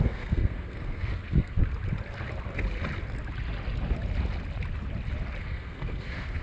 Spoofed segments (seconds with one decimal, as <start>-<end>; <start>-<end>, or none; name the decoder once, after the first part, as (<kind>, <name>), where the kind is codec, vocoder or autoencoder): 0.0-1.6 (codec, SNAC); 5.4-6.4